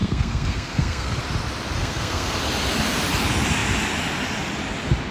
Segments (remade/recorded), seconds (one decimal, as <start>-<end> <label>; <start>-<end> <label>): 0.0-1.2 remade; 1.2-1.8 recorded; 1.8-2.4 remade; 2.4-5.1 recorded